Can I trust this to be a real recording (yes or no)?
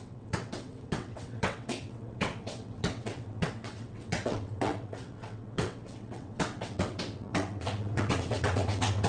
no